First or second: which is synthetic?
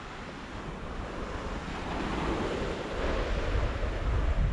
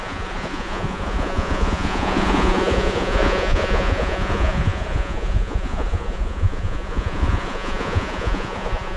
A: second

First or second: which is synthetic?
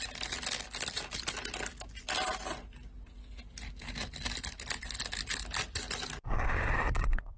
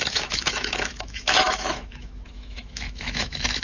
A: second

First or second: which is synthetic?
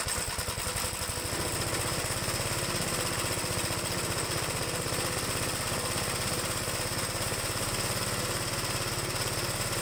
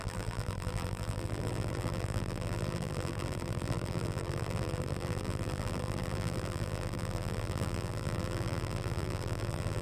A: second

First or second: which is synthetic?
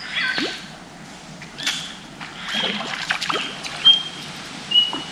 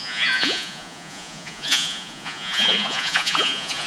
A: second